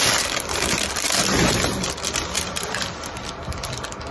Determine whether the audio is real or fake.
fake